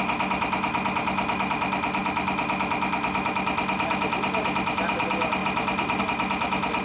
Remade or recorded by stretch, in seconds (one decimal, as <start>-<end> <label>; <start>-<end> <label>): 0.0-6.8 recorded